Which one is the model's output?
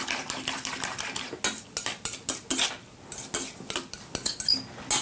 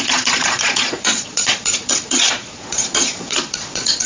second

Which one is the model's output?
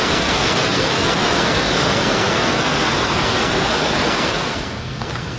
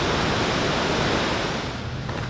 first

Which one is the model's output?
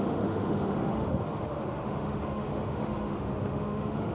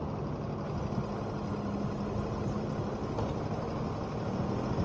first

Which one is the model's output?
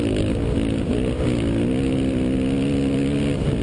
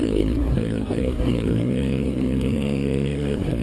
second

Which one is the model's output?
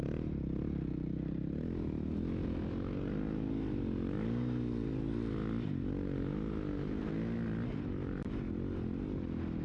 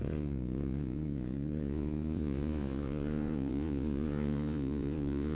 second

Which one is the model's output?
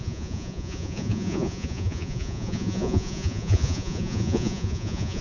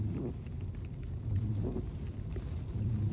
first